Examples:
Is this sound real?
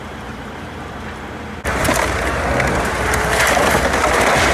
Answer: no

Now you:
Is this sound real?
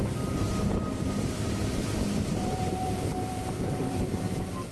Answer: no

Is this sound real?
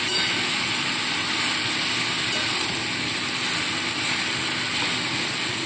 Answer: yes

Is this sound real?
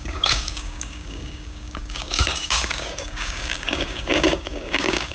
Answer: no